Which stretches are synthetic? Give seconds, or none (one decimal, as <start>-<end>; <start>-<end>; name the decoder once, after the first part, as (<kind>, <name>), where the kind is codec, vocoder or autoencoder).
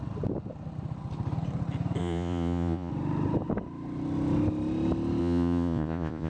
2.0-2.9 (vocoder, Vocos); 5.2-6.3